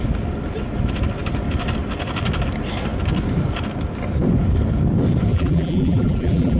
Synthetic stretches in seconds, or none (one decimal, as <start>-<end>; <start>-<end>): 5.3-6.6